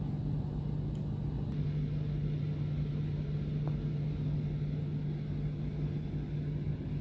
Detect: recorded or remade recorded